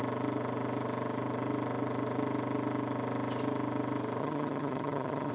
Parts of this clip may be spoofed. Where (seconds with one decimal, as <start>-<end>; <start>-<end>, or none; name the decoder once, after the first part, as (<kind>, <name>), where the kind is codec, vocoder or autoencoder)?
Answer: 4.2-5.3 (vocoder, HiFi-GAN)